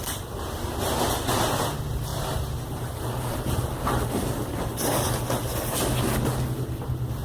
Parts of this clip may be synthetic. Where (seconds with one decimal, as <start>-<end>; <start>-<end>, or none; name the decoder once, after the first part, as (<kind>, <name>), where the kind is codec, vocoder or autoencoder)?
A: 2.1-4.7 (vocoder, BigVGAN v2)